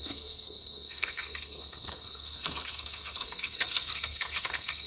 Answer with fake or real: fake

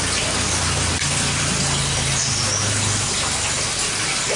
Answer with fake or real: real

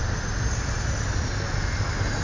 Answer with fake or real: real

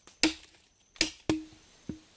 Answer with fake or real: real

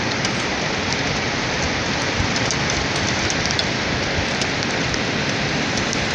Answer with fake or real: real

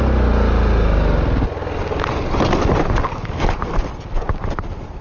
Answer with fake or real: real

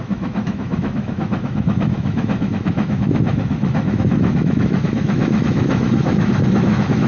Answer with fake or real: fake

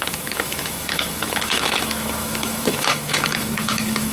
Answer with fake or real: fake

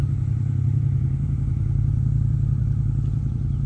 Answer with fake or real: fake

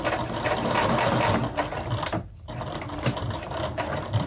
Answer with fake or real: real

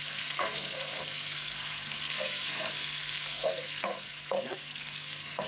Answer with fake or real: fake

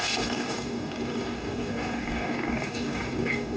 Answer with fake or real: fake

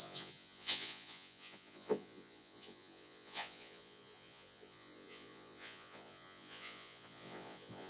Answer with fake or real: fake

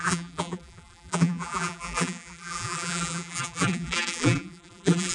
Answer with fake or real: fake